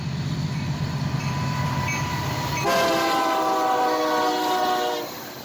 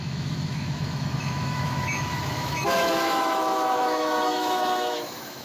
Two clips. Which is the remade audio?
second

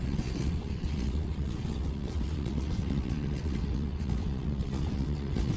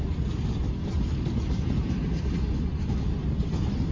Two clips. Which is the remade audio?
first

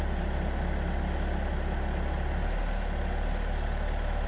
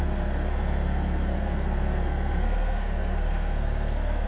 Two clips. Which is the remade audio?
second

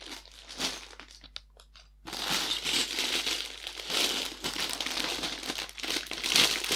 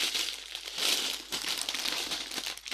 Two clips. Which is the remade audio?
second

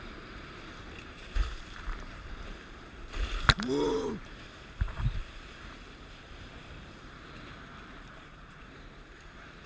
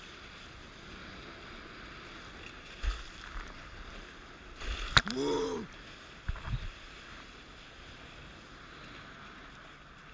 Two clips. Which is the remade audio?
first